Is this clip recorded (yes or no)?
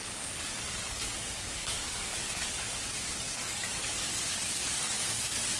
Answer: no